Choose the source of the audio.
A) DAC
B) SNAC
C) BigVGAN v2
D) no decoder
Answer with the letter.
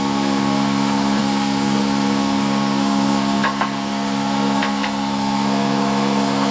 B